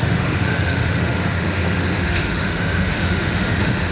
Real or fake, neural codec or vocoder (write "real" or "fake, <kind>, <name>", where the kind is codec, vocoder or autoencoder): fake, autoencoder, DAC-VAE